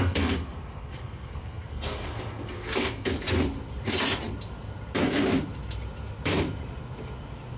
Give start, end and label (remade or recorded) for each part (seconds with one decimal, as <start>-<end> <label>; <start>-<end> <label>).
0.0-3.1 remade; 3.1-7.6 recorded